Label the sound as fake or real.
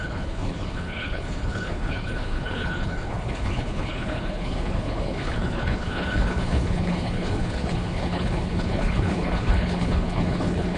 fake